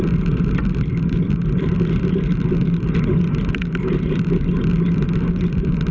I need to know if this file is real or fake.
real